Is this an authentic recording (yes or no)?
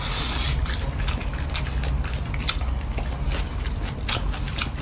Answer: no